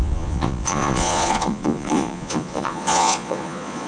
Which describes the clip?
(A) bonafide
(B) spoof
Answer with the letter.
B